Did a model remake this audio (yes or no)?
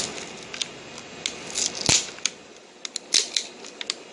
no